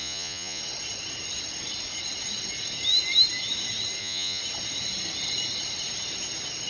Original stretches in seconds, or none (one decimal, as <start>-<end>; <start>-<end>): 0.6-4.0; 4.4-6.7